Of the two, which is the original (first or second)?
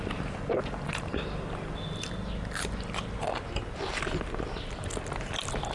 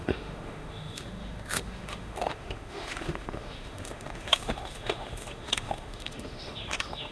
first